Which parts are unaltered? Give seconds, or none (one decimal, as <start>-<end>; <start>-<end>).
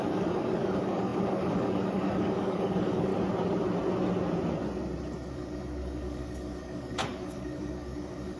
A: 3.1-5.3